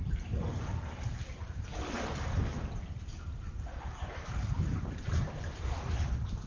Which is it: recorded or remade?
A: remade